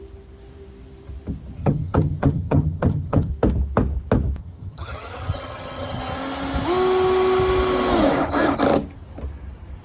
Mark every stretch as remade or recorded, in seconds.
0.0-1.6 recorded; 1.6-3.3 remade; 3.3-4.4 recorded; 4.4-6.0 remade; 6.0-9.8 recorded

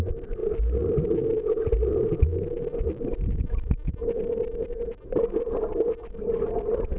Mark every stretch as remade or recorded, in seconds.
0.0-7.0 recorded